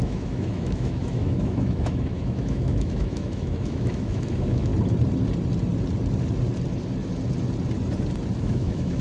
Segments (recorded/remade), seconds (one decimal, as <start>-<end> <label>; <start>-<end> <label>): 0.0-4.7 remade; 4.7-8.4 recorded; 8.4-9.0 remade